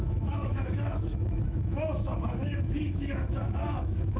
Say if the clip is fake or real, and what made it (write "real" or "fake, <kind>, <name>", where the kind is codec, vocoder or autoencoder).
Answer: fake, autoencoder, DAC-VAE